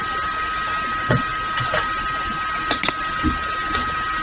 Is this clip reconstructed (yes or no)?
no